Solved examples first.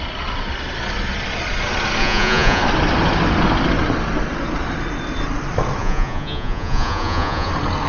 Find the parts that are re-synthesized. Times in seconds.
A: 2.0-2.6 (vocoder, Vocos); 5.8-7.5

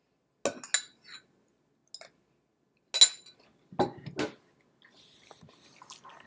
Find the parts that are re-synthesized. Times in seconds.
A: none

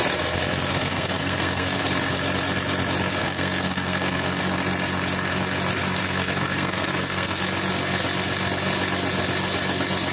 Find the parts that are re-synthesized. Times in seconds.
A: 0.7-1.8 (codec, SNAC); 3.2-4.4; 6.0-7.4

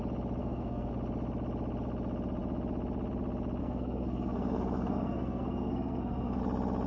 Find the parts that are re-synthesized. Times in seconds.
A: 0.4-0.9 (codec, SNAC); 3.6-6.4